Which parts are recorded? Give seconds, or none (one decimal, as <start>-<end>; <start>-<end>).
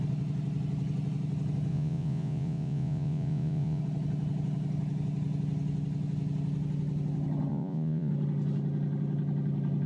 0.0-1.7; 3.8-7.5; 8.1-9.9